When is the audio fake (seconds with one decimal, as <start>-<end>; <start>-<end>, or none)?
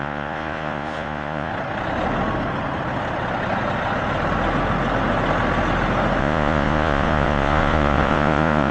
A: 0.0-1.5; 6.2-8.7